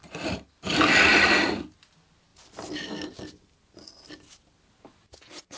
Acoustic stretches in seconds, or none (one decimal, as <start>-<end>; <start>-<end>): 0.0-5.6